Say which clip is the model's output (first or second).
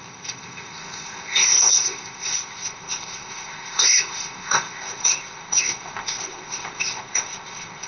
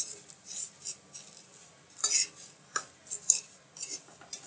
first